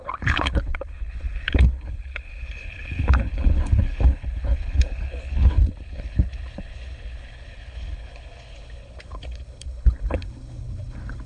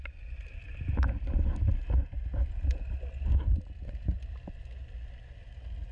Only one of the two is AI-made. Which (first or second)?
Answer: first